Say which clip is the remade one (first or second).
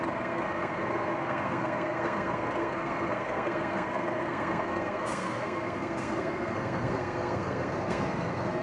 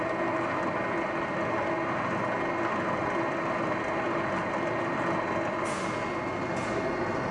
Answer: first